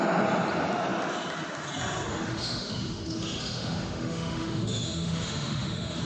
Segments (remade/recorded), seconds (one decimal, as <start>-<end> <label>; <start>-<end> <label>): 0.0-2.1 recorded; 2.1-6.0 remade